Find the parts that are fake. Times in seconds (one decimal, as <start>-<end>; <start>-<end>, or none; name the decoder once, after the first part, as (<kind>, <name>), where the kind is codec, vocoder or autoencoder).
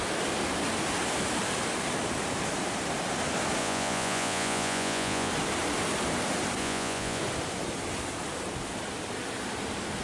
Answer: 3.6-5.3 (vocoder, Vocos); 6.6-7.2